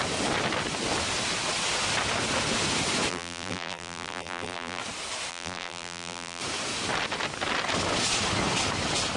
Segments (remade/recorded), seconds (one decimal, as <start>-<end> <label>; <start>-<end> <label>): 0.0-3.1 recorded; 3.1-4.8 remade; 4.8-5.3 recorded; 5.3-6.4 remade; 6.4-9.2 recorded